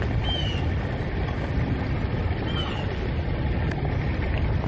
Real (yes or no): yes